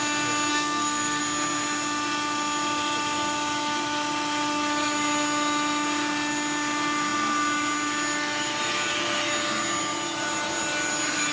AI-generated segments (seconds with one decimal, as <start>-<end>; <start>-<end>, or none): 0.5-1.2